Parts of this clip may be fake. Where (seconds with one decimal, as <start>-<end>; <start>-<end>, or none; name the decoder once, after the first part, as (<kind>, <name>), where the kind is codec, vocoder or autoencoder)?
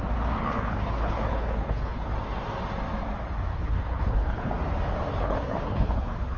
0.4-2.1 (codec, HILCodec); 3.5-4.5; 5.1-6.4